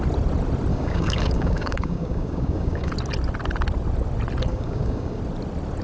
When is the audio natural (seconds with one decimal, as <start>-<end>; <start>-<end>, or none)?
0.0-0.7; 2.9-4.5; 5.2-5.8